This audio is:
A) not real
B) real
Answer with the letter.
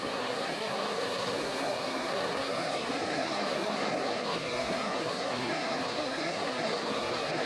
A